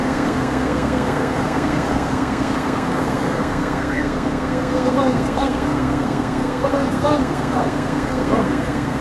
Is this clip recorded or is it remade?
remade